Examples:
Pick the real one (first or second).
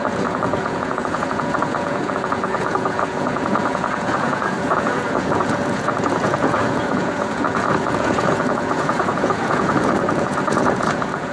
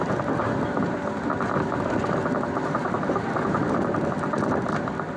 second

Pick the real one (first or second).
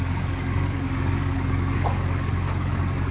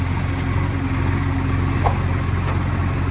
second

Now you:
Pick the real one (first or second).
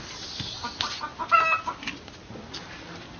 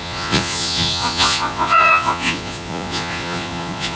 first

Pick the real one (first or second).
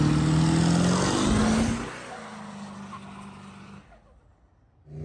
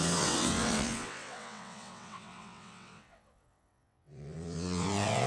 first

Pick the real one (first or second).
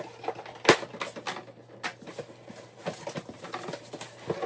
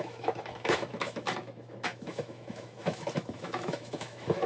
first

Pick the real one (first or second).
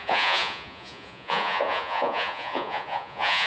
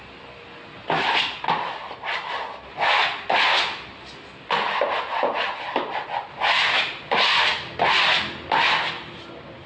second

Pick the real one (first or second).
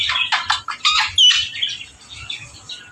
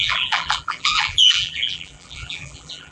first